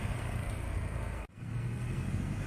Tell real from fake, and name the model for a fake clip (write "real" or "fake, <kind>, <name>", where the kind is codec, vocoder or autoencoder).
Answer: fake, codec, SNAC